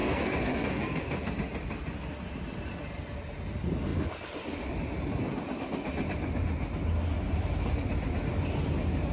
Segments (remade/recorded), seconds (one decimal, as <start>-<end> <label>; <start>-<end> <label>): 0.0-1.3 remade; 1.3-9.1 recorded

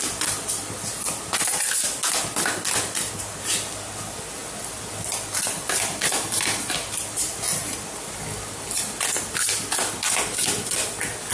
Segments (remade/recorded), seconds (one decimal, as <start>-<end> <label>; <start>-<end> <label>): 0.0-11.3 recorded

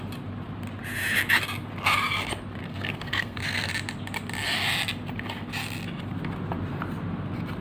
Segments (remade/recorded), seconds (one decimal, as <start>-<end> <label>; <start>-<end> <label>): 0.0-2.6 recorded; 2.6-3.7 remade; 3.7-7.6 recorded

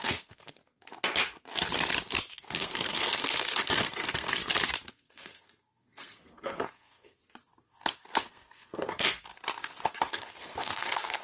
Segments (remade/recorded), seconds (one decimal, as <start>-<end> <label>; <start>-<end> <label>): 0.0-0.6 remade; 0.6-2.3 recorded; 2.3-4.4 remade; 4.4-4.9 recorded; 4.9-7.2 remade; 7.2-8.3 recorded; 8.3-9.3 remade; 9.3-10.1 recorded; 10.1-11.2 remade